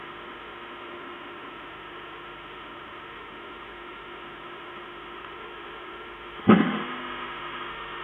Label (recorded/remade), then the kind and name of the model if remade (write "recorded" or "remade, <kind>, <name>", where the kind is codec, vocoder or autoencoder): remade, autoencoder, DAC-VAE